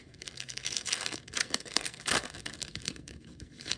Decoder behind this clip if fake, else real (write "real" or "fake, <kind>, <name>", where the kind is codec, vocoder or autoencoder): fake, codec, SNAC